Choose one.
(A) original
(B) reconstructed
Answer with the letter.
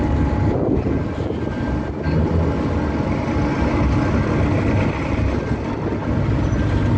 A